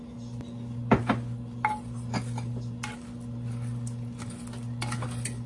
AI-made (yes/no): no